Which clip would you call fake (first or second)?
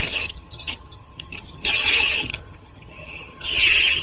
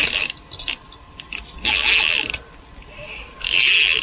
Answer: first